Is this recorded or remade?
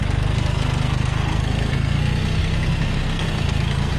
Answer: remade